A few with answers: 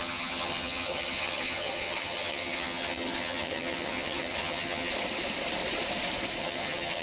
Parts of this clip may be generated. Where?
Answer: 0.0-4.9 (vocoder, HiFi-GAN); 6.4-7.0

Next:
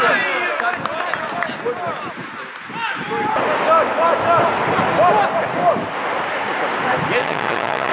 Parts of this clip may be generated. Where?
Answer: 7.2-7.9 (vocoder, HiFi-GAN)